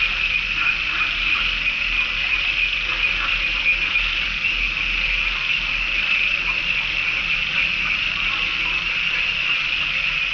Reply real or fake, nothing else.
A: real